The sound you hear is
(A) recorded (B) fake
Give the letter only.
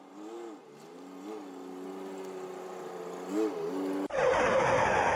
A